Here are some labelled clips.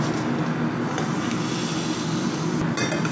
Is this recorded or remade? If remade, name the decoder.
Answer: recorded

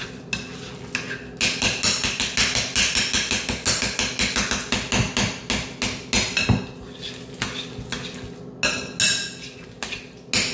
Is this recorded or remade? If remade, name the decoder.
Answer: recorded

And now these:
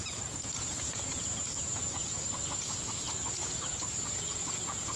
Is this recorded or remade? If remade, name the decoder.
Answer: remade, vocoder, Vocos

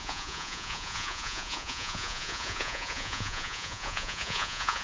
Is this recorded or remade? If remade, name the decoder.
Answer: remade, vocoder, Vocos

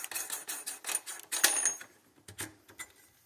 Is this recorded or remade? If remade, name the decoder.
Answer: recorded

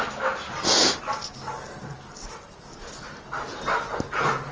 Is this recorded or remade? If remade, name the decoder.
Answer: recorded